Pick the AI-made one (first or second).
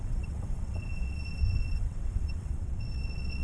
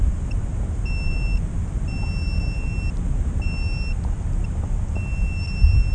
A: first